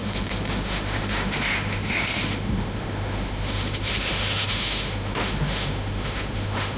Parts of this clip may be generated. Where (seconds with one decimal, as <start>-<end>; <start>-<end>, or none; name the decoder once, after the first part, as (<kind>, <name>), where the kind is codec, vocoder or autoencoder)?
0.0-6.8 (autoencoder, DAC-VAE)